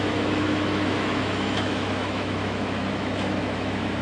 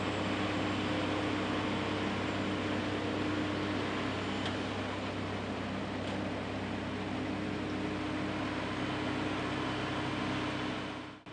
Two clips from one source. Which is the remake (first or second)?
first